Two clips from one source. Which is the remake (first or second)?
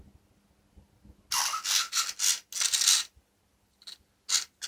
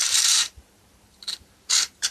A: second